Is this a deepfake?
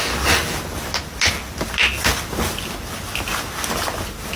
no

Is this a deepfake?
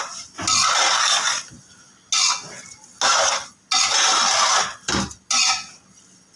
no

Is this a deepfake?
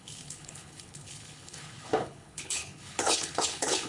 yes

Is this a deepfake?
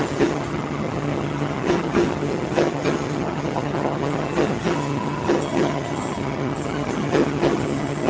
yes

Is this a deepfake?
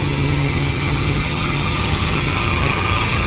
yes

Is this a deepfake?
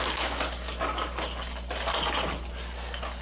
no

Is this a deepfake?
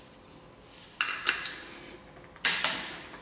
no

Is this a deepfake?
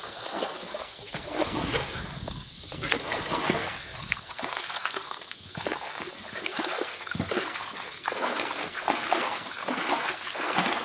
yes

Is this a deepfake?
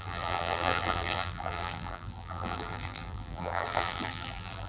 yes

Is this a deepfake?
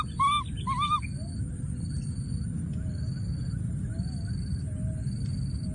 no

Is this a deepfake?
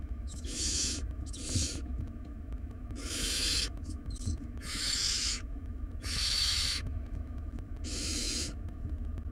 yes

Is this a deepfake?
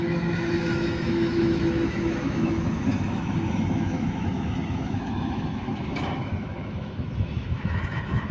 yes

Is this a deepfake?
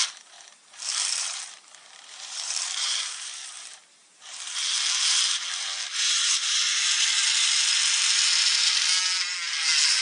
yes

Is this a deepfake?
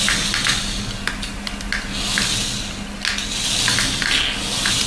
no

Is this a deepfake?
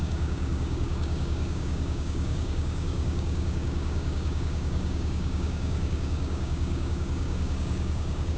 yes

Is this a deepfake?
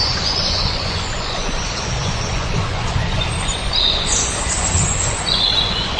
yes